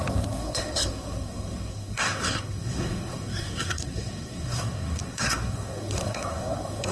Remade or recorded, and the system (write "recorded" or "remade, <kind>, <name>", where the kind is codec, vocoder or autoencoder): remade, codec, SNAC